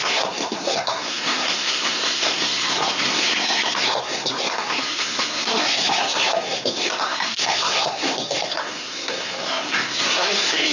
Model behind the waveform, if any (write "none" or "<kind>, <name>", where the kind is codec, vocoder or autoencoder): codec, SNAC